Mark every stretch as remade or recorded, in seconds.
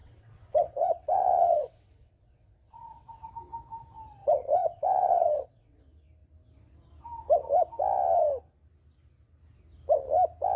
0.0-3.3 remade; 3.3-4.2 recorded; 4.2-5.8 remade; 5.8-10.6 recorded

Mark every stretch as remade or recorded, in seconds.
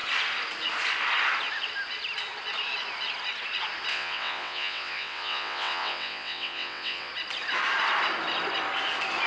0.0-3.9 recorded; 3.9-7.1 remade; 7.1-9.3 recorded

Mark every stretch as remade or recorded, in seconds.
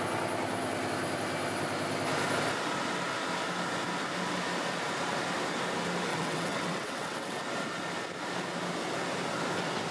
0.0-6.1 recorded; 6.1-7.4 remade; 7.4-9.9 recorded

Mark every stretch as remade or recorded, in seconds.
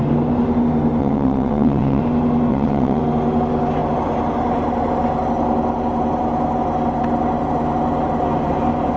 0.0-1.0 recorded; 1.0-2.0 remade; 2.0-2.5 recorded; 2.5-3.0 remade; 3.0-9.0 recorded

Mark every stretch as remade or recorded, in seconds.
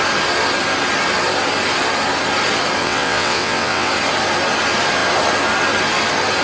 0.0-2.8 recorded; 2.8-3.9 remade; 3.9-6.4 recorded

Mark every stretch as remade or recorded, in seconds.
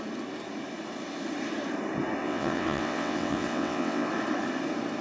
0.0-2.2 recorded; 2.2-4.1 remade; 4.1-5.0 recorded